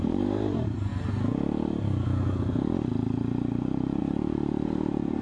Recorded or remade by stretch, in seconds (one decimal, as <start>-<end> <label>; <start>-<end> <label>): 0.0-0.9 remade; 0.9-4.0 recorded; 4.0-5.2 remade